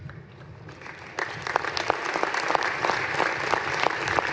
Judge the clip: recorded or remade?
recorded